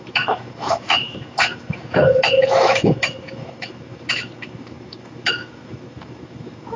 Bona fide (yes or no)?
no